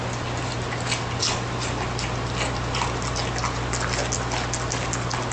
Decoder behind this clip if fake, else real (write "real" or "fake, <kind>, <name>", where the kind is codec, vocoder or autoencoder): real